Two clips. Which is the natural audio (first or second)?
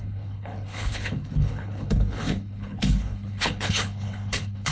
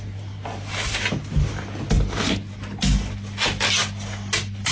second